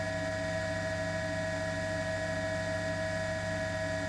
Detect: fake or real real